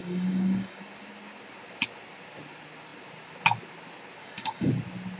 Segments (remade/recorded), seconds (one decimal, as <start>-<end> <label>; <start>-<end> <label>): 0.0-0.8 remade; 0.8-4.2 recorded; 4.2-4.7 remade; 4.7-5.2 recorded